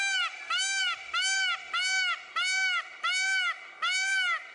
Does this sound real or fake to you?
real